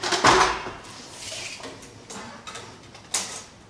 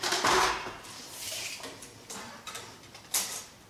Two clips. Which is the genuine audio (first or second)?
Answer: first